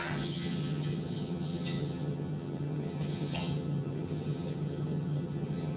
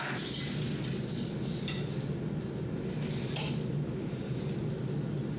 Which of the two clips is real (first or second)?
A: second